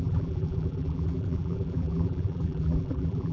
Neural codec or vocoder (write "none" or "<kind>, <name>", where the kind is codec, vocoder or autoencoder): vocoder, BigVGAN v2